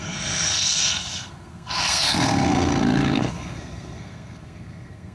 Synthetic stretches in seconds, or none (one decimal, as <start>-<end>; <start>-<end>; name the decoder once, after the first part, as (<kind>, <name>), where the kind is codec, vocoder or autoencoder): 0.0-5.1 (codec, SNAC)